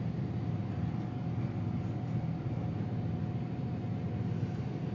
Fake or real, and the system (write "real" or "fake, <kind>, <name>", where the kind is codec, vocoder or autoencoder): real